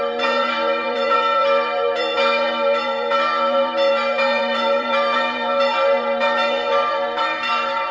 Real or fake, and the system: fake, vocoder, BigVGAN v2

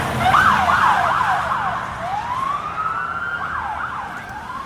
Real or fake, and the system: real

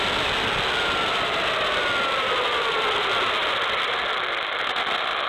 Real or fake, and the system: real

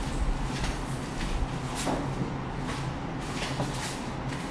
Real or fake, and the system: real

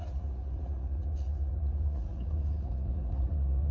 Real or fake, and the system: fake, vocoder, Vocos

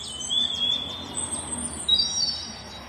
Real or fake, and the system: real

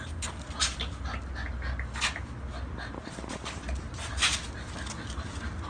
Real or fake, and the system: real